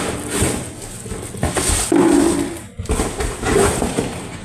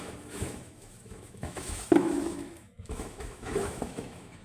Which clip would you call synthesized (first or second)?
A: second